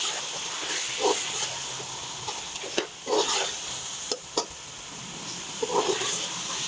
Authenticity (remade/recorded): recorded